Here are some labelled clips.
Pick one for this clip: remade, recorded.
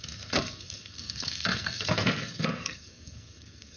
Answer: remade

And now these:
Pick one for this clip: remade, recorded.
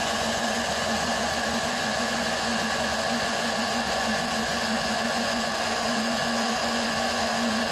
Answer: remade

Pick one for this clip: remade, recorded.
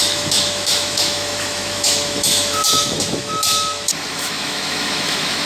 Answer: remade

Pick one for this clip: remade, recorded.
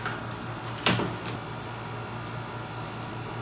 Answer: recorded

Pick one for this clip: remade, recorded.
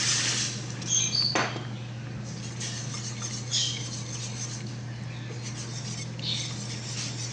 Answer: recorded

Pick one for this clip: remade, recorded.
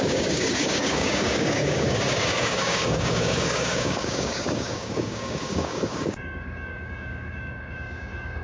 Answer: remade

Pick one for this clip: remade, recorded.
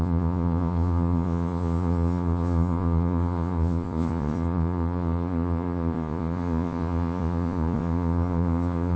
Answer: remade